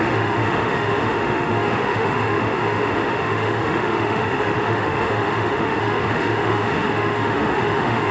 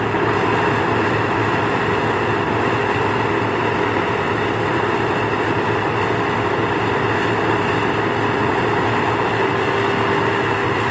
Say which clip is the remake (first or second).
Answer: first